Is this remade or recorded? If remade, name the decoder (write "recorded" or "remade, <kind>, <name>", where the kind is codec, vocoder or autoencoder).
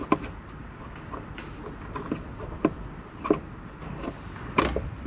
recorded